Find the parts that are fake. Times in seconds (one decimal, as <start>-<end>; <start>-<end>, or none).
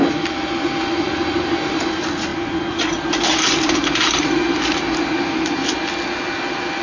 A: none